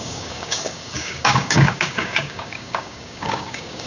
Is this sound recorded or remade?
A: remade